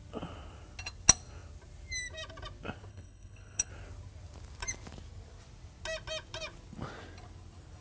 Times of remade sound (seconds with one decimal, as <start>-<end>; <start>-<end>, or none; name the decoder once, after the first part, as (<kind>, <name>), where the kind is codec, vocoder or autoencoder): 2.9-3.7 (codec, HILCodec)